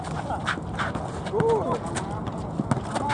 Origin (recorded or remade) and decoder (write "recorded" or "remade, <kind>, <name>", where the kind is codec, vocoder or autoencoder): recorded